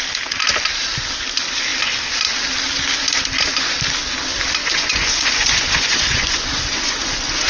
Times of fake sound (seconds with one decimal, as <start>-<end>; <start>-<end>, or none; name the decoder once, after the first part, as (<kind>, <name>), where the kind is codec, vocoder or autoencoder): 4.6-7.5 (vocoder, Vocos)